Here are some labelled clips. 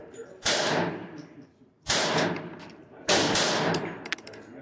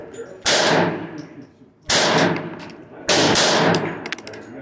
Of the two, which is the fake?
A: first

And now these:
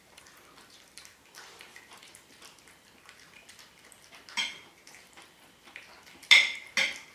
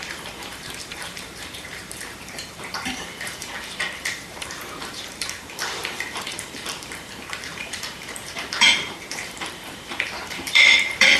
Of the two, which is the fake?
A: second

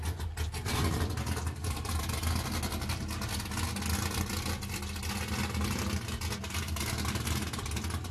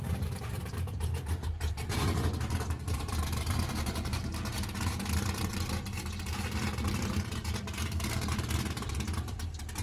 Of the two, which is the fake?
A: second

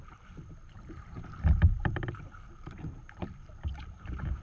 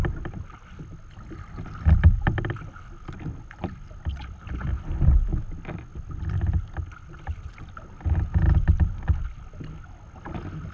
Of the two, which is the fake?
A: first